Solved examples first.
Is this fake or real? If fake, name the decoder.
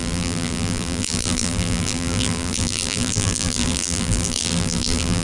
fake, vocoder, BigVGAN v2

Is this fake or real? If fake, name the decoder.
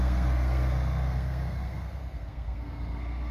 fake, codec, SNAC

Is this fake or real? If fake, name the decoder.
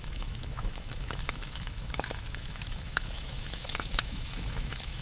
fake, autoencoder, DAC-VAE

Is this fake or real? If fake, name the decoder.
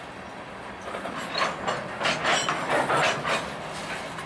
real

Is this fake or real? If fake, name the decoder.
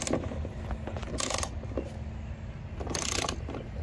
real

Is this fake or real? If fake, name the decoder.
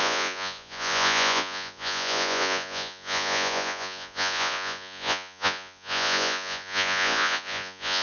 fake, vocoder, Vocos